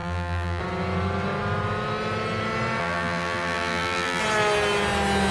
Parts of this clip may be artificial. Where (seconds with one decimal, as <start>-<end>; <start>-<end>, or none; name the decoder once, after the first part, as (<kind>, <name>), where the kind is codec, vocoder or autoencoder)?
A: 0.0-0.6 (vocoder, BigVGAN v2); 2.8-4.2